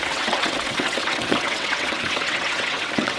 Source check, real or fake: fake